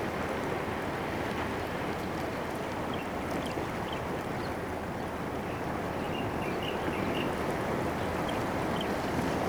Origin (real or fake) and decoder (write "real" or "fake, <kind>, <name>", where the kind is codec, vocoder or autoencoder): real